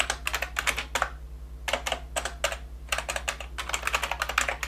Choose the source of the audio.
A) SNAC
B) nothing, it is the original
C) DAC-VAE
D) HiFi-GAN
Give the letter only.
B